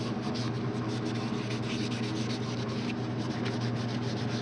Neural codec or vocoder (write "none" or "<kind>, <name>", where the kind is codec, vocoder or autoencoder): none